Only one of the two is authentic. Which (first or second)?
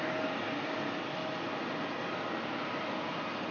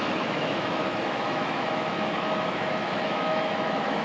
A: first